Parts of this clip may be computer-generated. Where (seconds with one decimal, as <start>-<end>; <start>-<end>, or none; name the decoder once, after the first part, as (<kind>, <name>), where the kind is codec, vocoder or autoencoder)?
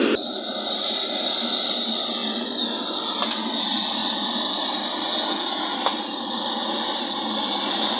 none